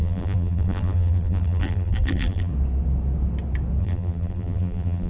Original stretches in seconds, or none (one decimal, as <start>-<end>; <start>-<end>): 2.5-3.8

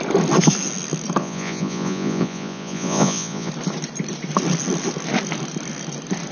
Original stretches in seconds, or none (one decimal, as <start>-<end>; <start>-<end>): 0.0-1.2; 3.5-6.3

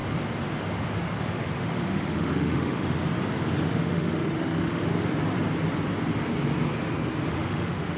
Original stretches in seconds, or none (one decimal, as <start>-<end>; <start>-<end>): 0.0-1.3; 3.0-3.6; 4.9-7.3

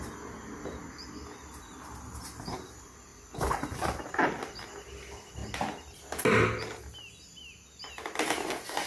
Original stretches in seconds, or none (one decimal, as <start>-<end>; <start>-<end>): 0.0-8.9

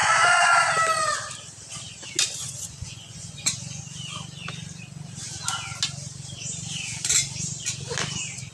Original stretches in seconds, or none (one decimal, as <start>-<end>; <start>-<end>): 0.5-2.4; 3.8-8.5

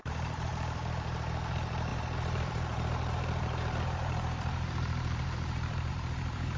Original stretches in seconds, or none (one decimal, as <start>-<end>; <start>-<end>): 0.5-1.5

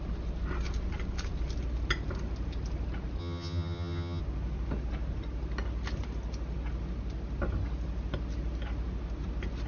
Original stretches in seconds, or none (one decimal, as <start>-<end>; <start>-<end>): 0.0-3.2; 4.2-9.7